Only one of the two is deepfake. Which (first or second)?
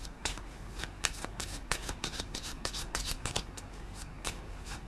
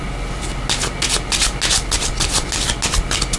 first